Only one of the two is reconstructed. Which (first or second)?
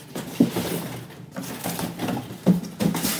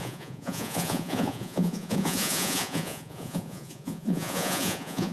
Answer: second